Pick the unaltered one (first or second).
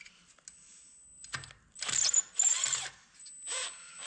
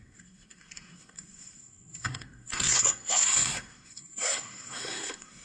first